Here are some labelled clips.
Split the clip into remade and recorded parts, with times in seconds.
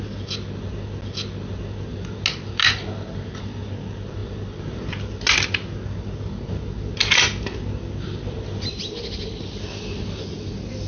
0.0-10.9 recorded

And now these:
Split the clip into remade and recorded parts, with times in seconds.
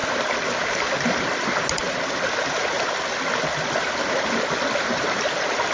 0.0-5.7 recorded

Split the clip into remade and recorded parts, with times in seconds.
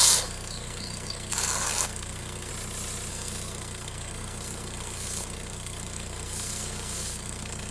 0.0-2.5 remade; 2.5-3.1 recorded; 3.1-7.7 remade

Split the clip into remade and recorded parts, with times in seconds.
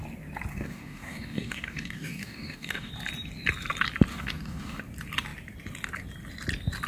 0.0-0.5 recorded; 0.5-2.9 remade; 2.9-4.1 recorded; 4.1-4.8 remade; 4.8-6.9 recorded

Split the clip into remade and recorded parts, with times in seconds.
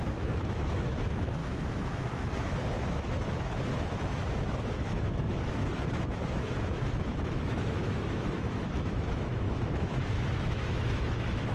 0.0-11.5 remade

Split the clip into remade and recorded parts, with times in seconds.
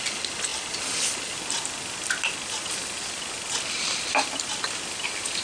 0.0-5.4 recorded